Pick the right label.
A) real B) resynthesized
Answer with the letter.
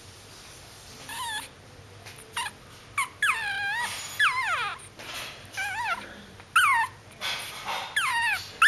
A